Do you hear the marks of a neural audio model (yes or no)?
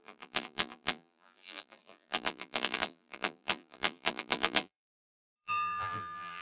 yes